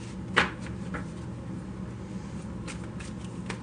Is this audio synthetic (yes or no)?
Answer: no